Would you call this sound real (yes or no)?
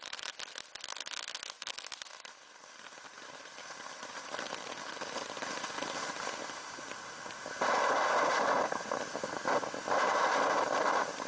yes